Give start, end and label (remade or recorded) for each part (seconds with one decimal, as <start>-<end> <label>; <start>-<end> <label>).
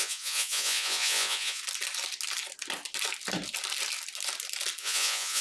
0.0-1.6 remade; 1.6-4.8 recorded; 4.8-5.4 remade